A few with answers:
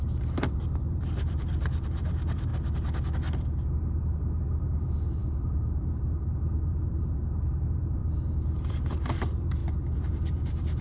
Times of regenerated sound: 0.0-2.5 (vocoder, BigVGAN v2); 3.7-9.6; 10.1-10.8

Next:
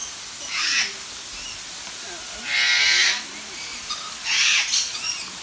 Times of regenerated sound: none

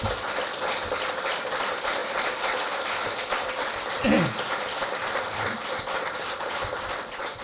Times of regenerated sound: none

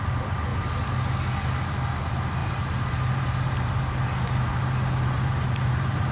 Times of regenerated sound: 2.4-6.1 (vocoder, BigVGAN v2)

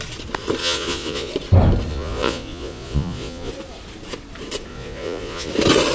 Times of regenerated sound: 0.6-1.3 (vocoder, Vocos); 1.9-3.5; 4.7-5.5

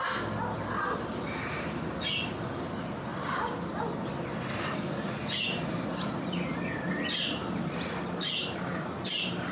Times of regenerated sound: 3.1-7.9 (vocoder, BigVGAN v2)

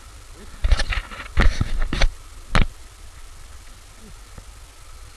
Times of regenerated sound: none